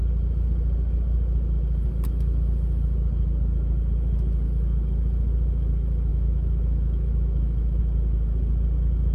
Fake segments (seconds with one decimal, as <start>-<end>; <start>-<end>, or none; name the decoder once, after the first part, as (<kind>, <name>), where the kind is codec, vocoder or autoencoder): 6.1-7.8 (autoencoder, DAC-VAE)